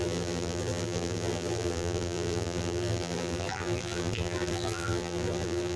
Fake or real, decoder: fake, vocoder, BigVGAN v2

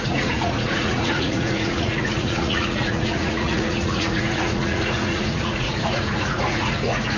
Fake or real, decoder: fake, vocoder, Vocos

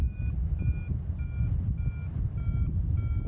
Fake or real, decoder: real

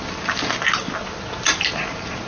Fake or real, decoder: real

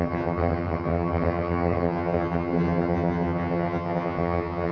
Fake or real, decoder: fake, vocoder, HiFi-GAN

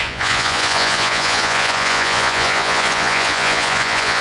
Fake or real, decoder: fake, vocoder, Vocos